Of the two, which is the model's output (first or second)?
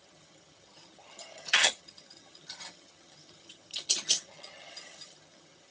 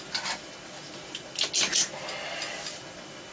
first